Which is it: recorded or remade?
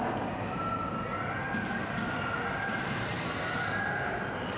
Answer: recorded